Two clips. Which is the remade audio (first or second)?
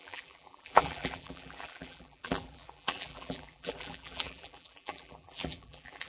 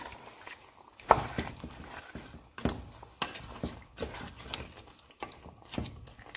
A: first